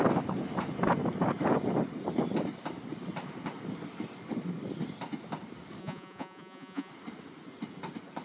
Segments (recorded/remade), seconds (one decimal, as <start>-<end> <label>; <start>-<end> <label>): 0.0-5.8 recorded; 5.8-6.9 remade; 6.9-8.2 recorded